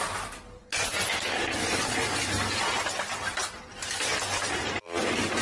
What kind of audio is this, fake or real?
real